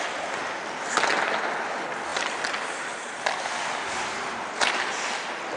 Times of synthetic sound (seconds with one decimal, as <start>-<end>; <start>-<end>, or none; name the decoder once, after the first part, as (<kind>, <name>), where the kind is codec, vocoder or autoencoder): none

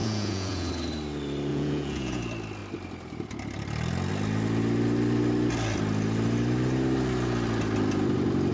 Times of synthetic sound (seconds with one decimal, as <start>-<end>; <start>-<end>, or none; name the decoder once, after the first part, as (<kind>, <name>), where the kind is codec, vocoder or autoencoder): 0.0-0.7 (vocoder, Vocos); 1.5-2.2

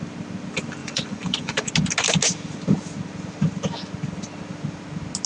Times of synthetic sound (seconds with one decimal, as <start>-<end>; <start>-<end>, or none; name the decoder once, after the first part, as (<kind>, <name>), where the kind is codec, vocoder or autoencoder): 0.8-1.7 (vocoder, Vocos)

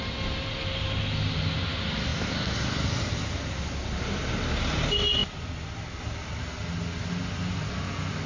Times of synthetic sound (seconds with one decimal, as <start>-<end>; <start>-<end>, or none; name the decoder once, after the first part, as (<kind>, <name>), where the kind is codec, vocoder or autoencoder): none

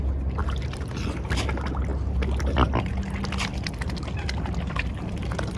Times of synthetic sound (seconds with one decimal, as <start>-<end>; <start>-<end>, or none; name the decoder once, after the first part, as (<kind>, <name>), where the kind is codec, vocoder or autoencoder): none

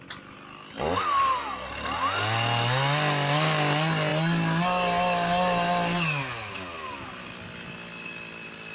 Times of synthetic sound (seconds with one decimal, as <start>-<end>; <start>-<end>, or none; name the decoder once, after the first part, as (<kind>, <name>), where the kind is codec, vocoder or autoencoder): none